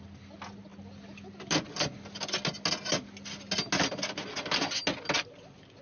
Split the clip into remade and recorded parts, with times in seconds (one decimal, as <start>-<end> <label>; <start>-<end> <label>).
0.0-5.8 recorded